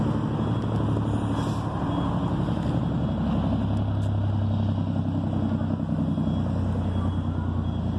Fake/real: real